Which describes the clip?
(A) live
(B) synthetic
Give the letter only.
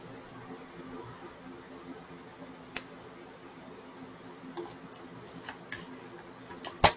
A